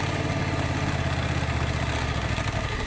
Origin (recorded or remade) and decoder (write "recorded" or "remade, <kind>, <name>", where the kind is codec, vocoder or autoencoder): recorded